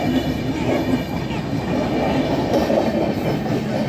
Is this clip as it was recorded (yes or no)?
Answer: yes